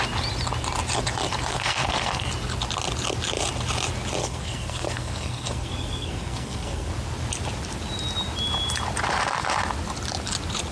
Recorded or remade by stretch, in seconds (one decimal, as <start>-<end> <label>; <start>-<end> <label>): 0.0-1.5 recorded; 1.5-2.3 remade; 2.3-4.2 recorded; 4.2-6.9 remade; 6.9-10.7 recorded

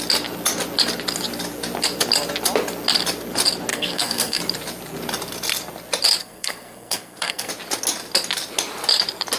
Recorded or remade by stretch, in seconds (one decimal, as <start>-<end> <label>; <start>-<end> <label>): 0.0-3.7 recorded; 3.7-4.4 remade; 4.4-6.2 recorded; 6.2-7.5 remade; 7.5-9.4 recorded

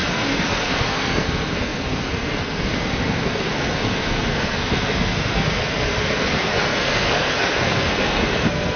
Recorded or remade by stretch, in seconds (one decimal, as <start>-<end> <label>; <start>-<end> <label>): 0.0-8.8 remade

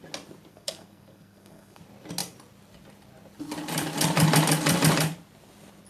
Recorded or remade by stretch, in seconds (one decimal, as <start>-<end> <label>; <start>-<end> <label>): 0.0-0.5 recorded; 0.5-1.8 remade; 1.8-5.9 recorded